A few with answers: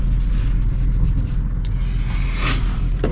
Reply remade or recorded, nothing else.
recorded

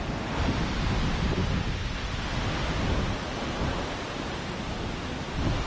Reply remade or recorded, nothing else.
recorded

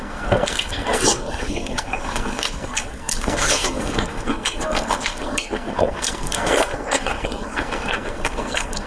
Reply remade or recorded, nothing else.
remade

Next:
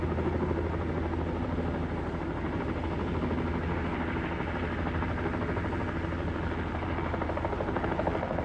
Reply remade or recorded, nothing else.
recorded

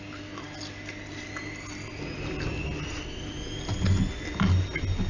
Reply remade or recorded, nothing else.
recorded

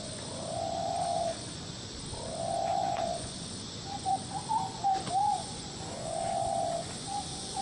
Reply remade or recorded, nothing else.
remade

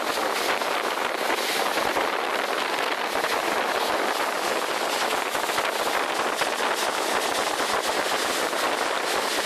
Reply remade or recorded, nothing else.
recorded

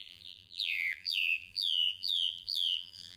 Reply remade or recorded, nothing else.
remade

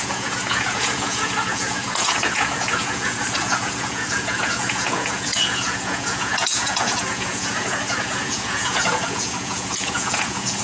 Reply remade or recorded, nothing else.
remade